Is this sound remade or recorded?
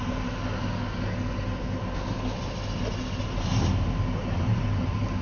recorded